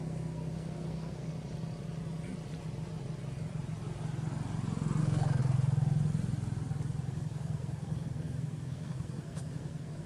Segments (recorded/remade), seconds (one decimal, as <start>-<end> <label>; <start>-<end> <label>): 0.0-1.3 remade; 1.3-5.0 recorded; 5.0-5.4 remade; 5.4-7.1 recorded; 7.1-10.1 remade